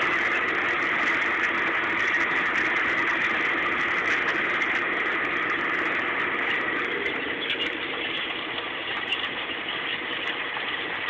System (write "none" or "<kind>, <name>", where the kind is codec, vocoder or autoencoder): none